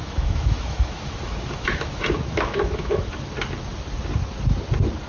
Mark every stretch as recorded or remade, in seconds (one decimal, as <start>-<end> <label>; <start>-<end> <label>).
0.0-3.1 remade; 3.1-5.1 recorded